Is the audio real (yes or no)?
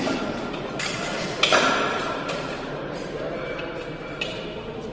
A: yes